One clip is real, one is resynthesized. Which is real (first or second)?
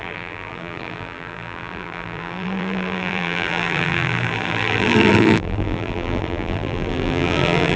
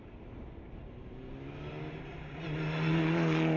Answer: second